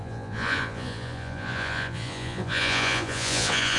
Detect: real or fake fake